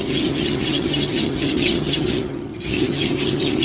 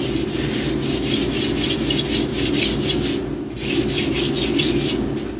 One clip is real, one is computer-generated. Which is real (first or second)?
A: second